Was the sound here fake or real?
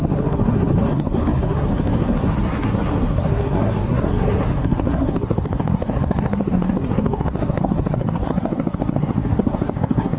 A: fake